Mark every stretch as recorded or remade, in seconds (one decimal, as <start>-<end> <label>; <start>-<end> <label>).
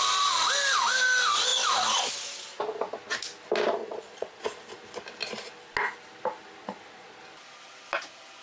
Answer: 0.0-3.8 recorded; 3.8-4.4 remade; 4.4-6.6 recorded; 6.6-7.2 remade; 7.2-8.4 recorded